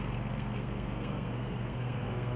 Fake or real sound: fake